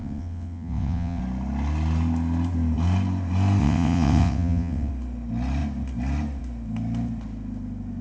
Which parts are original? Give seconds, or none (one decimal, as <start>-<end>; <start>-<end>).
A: 1.2-3.6; 4.9-8.0